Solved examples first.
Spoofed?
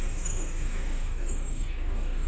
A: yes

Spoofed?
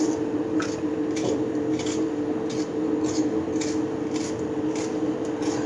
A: no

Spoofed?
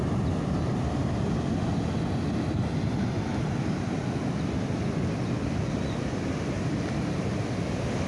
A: no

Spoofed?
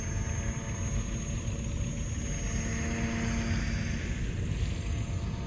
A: no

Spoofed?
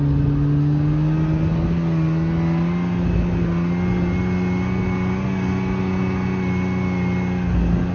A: no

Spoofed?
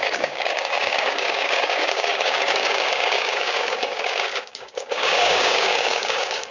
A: yes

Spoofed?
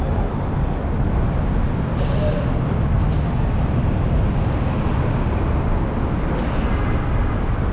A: no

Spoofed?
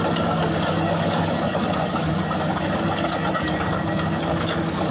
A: yes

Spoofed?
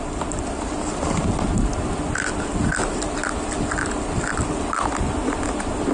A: no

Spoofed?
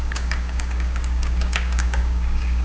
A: yes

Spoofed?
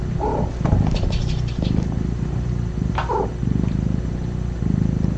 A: no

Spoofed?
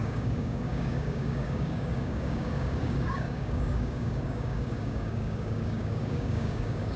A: yes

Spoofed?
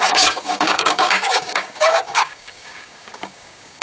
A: yes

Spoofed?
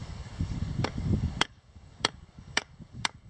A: yes